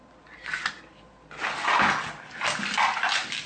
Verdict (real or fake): real